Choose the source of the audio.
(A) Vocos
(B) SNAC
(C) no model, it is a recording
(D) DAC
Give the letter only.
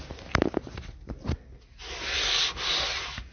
C